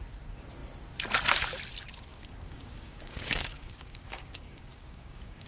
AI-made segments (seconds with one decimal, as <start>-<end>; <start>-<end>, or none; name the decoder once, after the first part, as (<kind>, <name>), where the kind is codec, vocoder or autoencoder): 2.1-5.5 (codec, DAC)